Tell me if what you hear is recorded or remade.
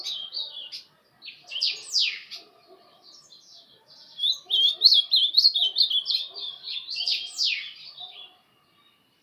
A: recorded